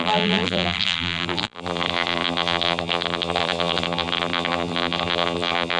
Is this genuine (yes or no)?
no